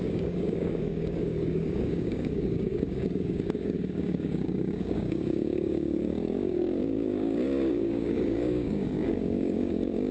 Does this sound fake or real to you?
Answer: fake